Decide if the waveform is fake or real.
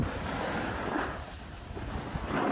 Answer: real